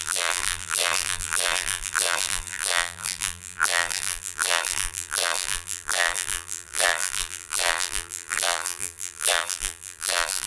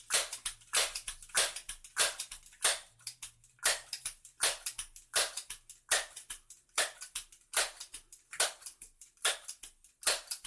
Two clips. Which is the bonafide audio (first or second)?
second